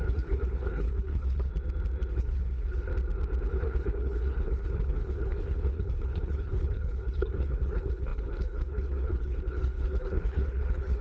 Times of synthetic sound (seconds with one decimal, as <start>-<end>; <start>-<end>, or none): 0.0-1.5; 2.1-2.9; 3.5-11.0